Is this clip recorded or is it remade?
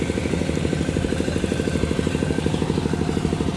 recorded